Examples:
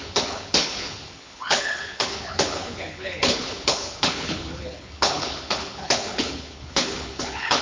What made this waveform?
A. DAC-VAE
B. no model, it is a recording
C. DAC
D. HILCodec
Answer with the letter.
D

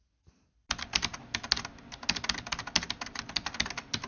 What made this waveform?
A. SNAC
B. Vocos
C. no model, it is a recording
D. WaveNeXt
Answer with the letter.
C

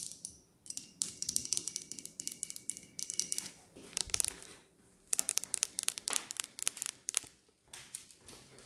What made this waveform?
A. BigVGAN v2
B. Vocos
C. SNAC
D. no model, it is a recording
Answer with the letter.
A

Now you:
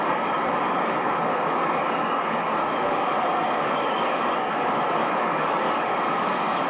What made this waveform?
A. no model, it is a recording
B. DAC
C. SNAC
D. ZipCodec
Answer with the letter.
B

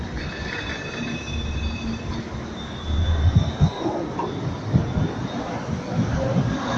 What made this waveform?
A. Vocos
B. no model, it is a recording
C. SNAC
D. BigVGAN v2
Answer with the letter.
B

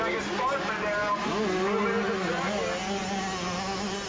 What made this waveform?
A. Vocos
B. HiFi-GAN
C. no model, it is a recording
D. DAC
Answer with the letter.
C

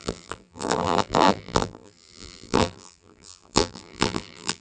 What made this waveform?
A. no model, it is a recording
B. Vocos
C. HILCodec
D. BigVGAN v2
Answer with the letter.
D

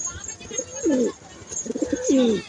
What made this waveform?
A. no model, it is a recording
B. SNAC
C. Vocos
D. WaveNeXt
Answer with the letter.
A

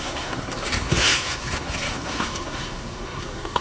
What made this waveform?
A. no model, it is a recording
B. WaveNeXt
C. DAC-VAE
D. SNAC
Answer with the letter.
D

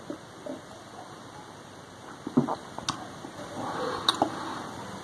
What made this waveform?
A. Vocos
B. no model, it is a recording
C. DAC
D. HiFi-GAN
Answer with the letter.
B